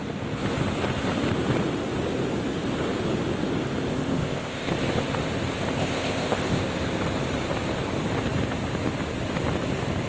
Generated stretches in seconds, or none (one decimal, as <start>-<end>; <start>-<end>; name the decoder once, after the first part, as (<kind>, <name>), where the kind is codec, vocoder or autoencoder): 3.9-4.7 (codec, ZipCodec); 5.8-6.6